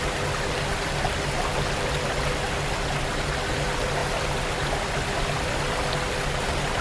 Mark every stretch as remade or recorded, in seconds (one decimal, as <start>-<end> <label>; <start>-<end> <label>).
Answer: 0.0-4.0 recorded; 4.0-5.6 remade; 5.6-6.8 recorded